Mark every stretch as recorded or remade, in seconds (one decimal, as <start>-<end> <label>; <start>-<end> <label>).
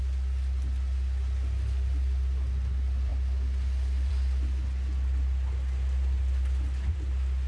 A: 0.0-7.5 recorded